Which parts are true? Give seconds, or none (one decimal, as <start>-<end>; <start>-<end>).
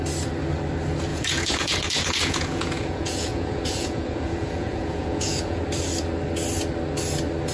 0.0-1.1; 5.6-7.5